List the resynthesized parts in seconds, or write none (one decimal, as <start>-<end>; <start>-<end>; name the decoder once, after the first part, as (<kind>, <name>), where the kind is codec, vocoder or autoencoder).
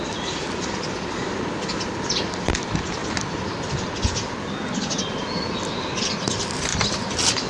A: none